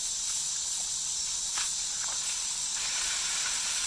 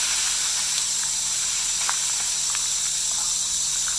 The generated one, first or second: first